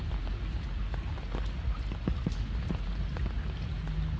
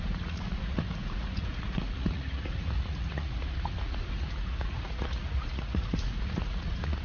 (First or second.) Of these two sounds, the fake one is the second